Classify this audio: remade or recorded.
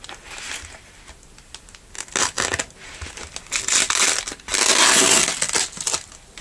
recorded